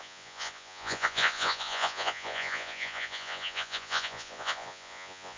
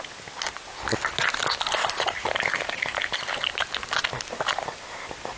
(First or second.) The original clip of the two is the second